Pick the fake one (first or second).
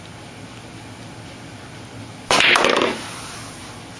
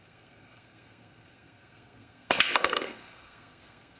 second